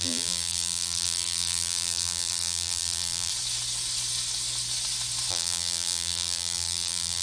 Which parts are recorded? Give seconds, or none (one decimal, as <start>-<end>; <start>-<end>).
3.3-5.3